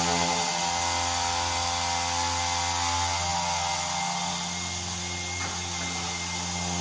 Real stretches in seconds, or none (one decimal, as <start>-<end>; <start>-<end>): 0.0-6.8